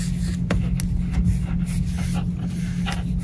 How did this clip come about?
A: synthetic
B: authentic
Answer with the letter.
B